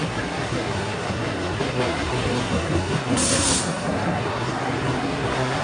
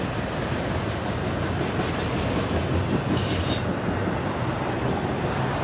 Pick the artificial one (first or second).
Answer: first